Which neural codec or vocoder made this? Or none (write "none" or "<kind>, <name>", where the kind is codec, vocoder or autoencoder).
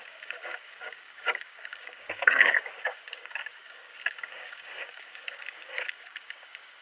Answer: codec, DAC